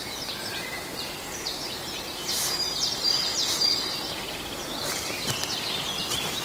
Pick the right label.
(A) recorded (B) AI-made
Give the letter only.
A